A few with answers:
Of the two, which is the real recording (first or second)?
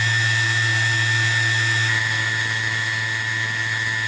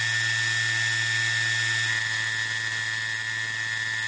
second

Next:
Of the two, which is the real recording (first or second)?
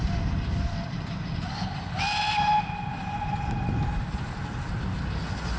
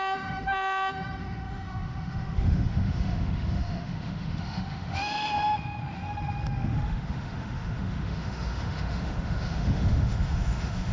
first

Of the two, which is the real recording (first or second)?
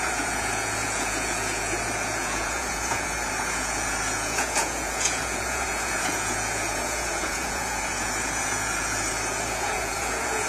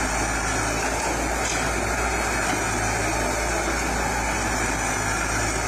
second